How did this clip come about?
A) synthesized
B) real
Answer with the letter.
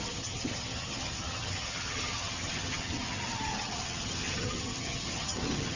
A